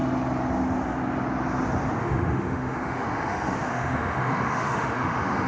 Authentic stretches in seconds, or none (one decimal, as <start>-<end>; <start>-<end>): 0.0-2.0